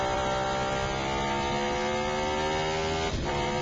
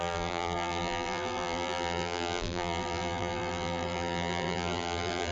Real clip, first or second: first